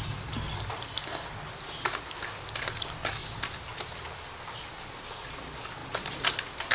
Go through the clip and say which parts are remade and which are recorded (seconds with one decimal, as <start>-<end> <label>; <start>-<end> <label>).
0.0-3.2 recorded; 3.2-4.6 remade; 4.6-5.8 recorded; 5.8-6.3 remade; 6.3-6.7 recorded